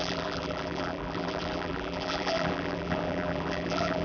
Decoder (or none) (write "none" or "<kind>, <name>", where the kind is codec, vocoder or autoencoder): vocoder, BigVGAN v2